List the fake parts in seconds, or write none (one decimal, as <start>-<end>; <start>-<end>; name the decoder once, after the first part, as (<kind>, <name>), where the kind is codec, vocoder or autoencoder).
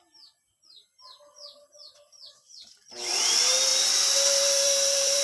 3.7-5.2 (vocoder, BigVGAN v2)